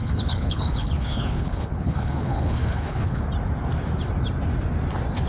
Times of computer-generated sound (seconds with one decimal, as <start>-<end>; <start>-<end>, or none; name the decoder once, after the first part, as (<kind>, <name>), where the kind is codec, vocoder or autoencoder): 0.0-3.2 (codec, HILCodec)